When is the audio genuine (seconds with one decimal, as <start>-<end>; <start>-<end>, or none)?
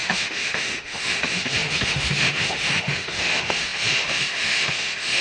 none